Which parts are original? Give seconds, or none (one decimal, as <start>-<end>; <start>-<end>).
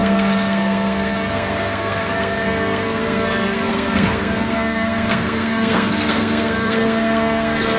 none